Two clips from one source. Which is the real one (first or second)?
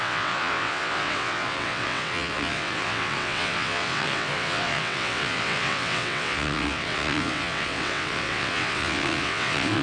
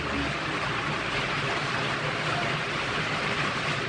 second